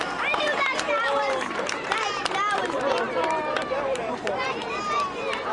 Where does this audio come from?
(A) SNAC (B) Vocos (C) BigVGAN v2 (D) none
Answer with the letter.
C